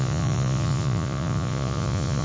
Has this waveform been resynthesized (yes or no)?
yes